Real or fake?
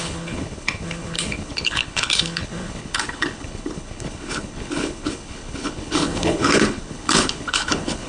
fake